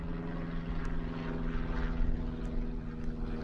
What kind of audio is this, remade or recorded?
recorded